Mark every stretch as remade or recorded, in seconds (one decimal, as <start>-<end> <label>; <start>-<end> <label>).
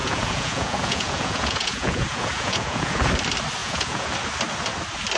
0.0-3.1 remade; 3.1-3.6 recorded; 3.6-4.1 remade; 4.1-5.2 recorded